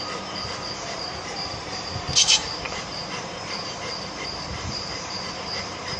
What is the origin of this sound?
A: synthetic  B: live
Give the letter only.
A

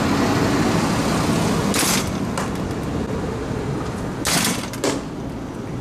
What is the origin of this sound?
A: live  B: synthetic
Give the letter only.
A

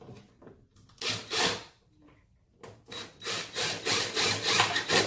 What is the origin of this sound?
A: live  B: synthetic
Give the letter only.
B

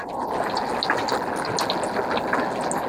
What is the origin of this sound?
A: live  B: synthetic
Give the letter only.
A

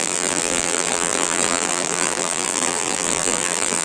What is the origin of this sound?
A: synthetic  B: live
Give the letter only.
A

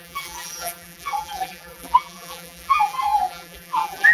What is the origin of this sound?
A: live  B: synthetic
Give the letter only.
B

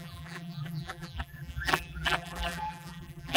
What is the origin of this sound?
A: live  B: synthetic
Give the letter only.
B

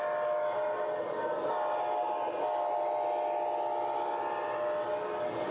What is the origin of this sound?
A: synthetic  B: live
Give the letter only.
B